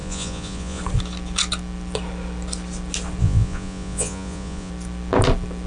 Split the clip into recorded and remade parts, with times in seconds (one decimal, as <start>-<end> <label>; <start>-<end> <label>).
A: 0.0-0.8 remade; 0.8-3.2 recorded; 3.2-4.7 remade; 4.7-5.7 recorded